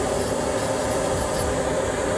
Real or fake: real